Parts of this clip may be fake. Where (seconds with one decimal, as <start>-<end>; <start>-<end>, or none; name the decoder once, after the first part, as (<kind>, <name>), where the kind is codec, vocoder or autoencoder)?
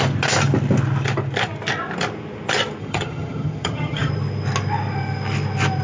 2.8-4.1 (vocoder, HiFi-GAN)